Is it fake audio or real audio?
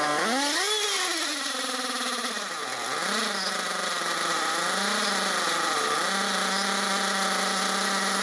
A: real